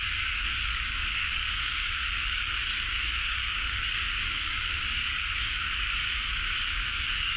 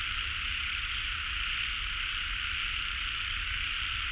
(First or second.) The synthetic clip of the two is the first